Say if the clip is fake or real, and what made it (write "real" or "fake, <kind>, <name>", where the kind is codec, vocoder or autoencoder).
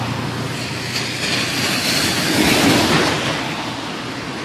real